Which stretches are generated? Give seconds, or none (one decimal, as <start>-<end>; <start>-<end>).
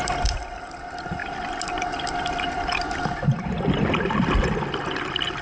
none